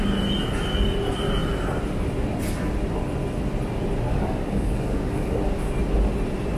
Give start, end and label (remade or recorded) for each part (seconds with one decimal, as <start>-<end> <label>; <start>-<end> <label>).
0.0-4.1 recorded; 4.1-5.4 remade; 5.4-6.6 recorded